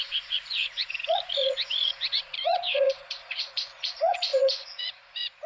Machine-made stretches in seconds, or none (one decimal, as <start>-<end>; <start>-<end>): 0.0-5.5